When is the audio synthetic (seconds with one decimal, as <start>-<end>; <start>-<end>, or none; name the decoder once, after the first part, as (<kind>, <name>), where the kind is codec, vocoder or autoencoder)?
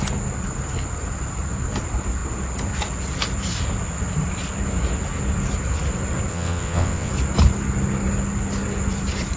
6.3-7.1 (vocoder, WaveNeXt)